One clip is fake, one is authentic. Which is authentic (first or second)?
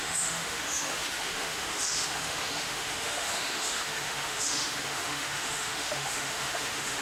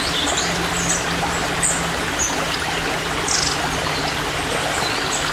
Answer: second